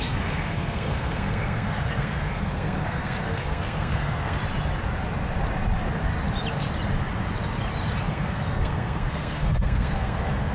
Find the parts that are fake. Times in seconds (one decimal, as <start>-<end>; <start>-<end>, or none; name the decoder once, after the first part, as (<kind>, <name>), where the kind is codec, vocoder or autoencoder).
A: 0.0-4.4 (codec, SNAC); 8.1-10.5